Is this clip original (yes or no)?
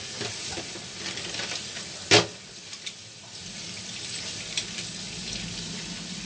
yes